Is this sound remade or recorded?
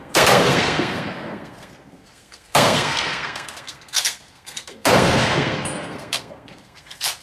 remade